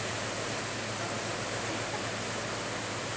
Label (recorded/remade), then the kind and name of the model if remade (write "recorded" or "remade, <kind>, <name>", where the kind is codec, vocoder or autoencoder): recorded